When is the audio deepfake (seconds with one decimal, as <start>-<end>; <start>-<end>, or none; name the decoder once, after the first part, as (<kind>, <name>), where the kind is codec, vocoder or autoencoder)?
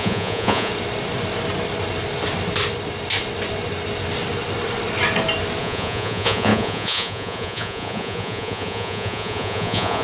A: 0.0-0.7 (vocoder, Vocos); 5.6-10.0